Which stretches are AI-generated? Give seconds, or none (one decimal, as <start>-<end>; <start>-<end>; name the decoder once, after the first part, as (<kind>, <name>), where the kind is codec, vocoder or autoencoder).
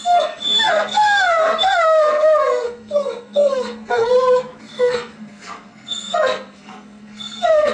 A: 0.0-4.1 (codec, SNAC); 4.6-7.7